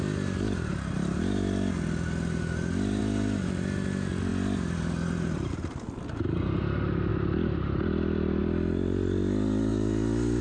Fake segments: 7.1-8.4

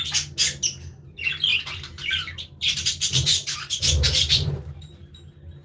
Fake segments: 1.5-4.9